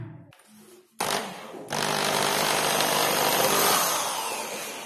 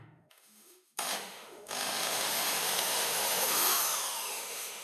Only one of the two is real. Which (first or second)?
first